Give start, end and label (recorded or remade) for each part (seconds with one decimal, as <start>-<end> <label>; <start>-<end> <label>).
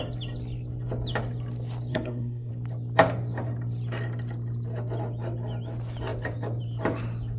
0.0-1.9 recorded; 1.9-2.5 remade; 2.5-7.4 recorded